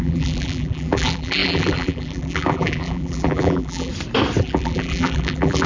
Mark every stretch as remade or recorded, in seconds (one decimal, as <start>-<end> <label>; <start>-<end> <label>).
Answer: 0.0-3.9 remade; 3.9-4.4 recorded; 4.4-5.7 remade